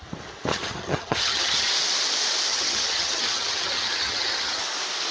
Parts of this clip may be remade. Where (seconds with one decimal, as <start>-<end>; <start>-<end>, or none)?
0.5-1.7; 2.5-4.6